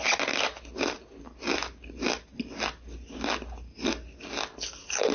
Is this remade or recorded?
recorded